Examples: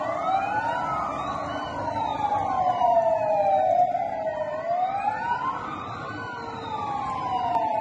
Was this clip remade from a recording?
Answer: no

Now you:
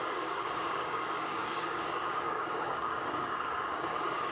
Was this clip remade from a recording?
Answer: yes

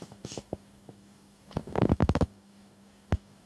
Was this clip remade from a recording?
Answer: yes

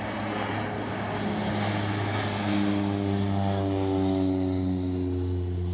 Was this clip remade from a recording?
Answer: no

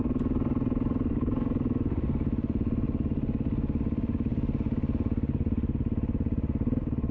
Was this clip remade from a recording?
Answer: no